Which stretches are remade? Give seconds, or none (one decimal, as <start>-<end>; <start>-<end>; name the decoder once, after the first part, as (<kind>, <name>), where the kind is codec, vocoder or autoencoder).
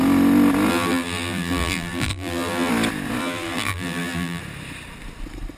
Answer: 0.7-2.7 (vocoder, BigVGAN v2); 3.2-4.4